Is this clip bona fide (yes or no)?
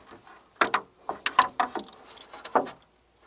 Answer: yes